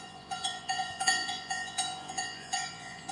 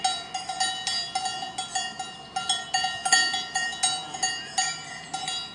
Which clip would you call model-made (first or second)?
first